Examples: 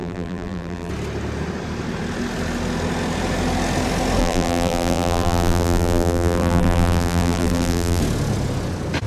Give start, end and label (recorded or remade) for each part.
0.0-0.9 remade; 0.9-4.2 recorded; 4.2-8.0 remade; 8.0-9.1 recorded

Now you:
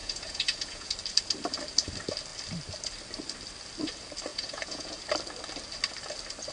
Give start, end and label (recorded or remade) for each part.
0.0-0.9 remade; 0.9-4.3 recorded; 4.3-5.0 remade; 5.0-6.5 recorded